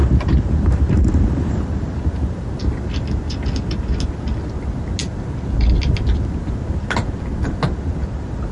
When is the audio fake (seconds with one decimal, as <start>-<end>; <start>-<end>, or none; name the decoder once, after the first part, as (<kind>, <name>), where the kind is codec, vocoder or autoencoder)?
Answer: 0.0-2.6 (vocoder, BigVGAN v2)